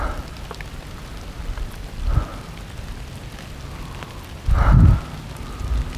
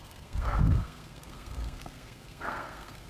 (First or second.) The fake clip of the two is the second